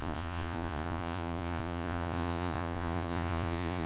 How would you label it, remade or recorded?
remade